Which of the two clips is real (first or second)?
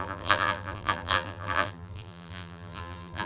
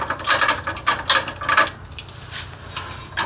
second